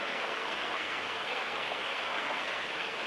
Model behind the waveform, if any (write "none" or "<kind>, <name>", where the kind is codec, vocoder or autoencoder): codec, SNAC